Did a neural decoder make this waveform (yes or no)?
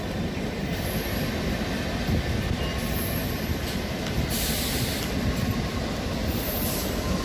no